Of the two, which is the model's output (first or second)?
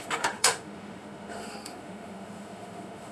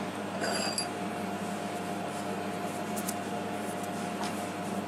first